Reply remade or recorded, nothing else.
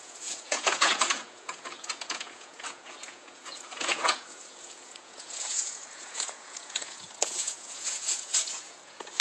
remade